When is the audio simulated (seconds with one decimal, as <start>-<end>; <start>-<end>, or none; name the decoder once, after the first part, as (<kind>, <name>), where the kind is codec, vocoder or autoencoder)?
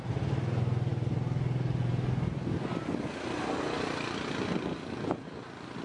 none